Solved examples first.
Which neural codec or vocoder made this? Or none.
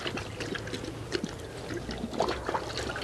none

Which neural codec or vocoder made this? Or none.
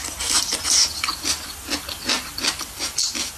none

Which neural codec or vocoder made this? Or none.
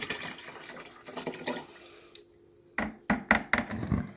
none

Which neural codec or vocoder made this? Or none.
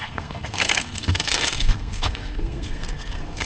codec, SNAC